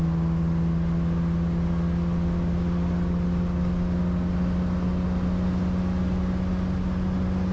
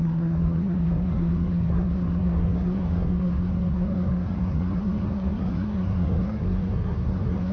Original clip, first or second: first